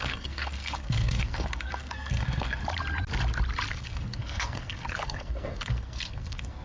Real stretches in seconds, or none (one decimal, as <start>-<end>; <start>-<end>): 2.6-3.7